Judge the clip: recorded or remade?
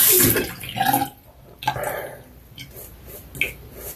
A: recorded